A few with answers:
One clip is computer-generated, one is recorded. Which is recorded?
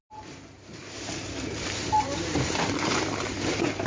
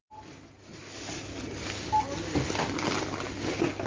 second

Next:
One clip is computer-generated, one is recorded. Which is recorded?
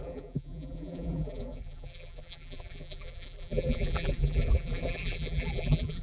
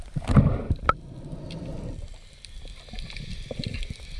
second